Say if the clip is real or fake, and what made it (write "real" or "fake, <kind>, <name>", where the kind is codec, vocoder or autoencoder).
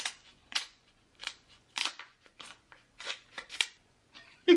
fake, vocoder, Vocos